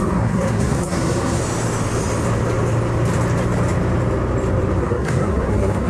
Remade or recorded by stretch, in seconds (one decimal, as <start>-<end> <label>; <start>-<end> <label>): 0.0-1.4 remade; 1.4-4.8 recorded; 4.8-5.9 remade